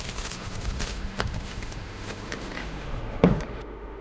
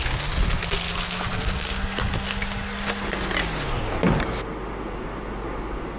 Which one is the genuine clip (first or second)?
second